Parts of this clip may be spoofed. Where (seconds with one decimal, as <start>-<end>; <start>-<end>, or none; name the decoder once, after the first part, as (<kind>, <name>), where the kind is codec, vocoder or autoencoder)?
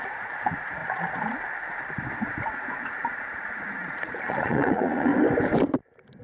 0.0-0.8 (vocoder, Vocos); 2.2-5.1